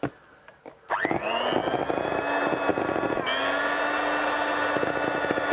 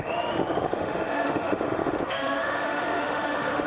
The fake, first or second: second